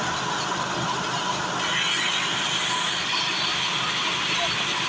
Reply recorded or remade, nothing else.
recorded